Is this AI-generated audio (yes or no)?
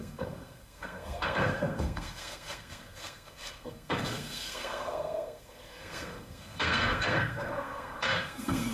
yes